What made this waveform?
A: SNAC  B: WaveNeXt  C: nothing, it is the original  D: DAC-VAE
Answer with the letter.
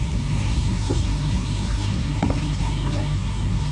A